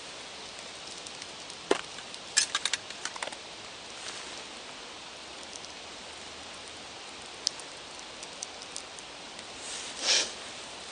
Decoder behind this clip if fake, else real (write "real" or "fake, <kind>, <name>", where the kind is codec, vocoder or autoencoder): real